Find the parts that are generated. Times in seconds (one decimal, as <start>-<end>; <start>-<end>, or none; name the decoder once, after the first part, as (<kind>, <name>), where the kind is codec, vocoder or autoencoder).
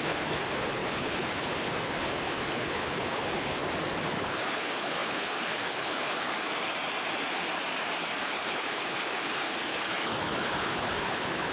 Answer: 0.0-3.6 (codec, HILCodec); 4.1-6.3; 8.2-11.5